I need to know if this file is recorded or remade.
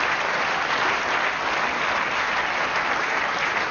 recorded